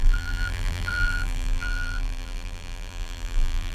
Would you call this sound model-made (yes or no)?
yes